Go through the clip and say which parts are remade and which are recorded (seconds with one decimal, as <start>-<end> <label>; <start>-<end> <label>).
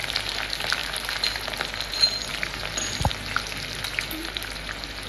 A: 0.0-5.1 recorded